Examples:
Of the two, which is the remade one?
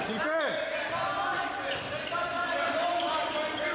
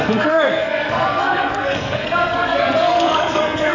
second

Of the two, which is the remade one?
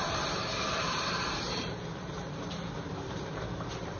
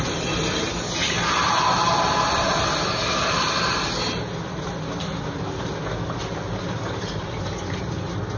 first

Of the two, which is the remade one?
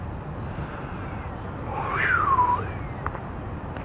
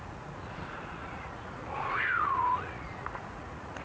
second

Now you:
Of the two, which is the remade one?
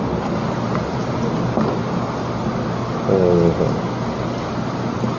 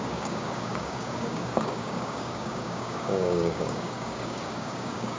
second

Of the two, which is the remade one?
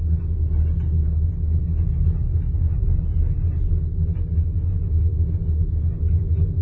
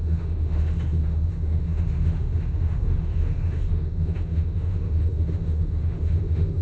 second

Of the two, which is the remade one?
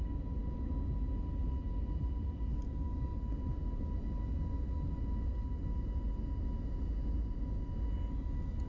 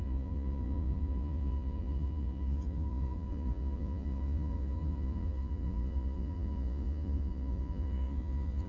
second